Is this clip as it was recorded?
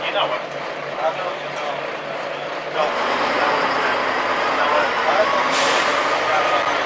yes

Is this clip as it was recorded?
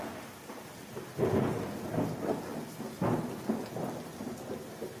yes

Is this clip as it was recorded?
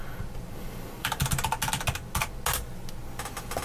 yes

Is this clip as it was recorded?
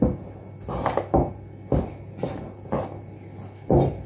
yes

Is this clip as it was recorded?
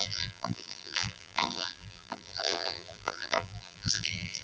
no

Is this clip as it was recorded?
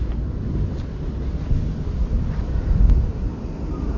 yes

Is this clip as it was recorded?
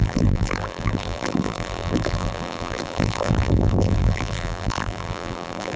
no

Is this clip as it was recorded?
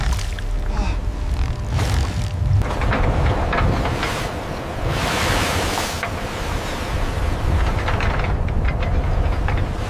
yes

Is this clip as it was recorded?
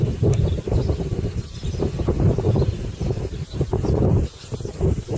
yes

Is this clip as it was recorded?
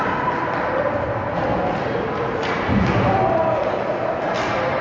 yes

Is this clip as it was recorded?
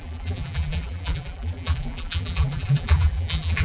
no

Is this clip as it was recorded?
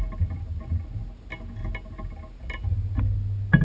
yes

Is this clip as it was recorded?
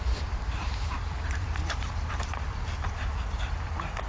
no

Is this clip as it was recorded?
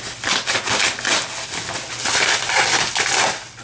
yes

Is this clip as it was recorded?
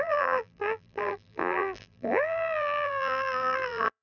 no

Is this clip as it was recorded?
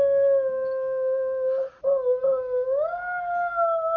yes